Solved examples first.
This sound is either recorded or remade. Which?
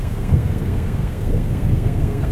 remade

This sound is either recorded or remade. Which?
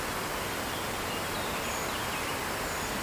recorded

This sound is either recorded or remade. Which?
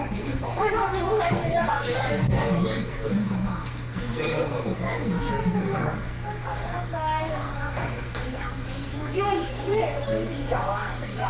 remade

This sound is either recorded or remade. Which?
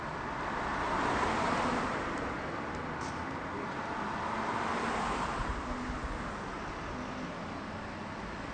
recorded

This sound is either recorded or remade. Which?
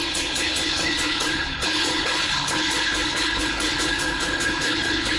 remade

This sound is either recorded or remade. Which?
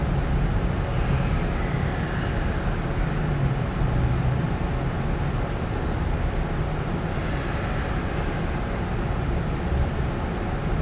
recorded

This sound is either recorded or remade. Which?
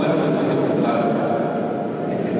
remade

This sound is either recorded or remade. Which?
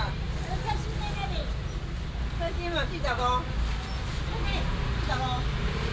recorded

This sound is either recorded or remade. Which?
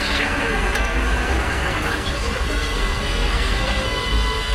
remade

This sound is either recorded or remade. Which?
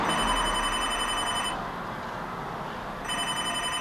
recorded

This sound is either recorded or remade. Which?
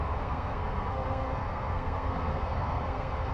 remade